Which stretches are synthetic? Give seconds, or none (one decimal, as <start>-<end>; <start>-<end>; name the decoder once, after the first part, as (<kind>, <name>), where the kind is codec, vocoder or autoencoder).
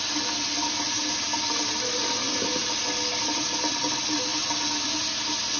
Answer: none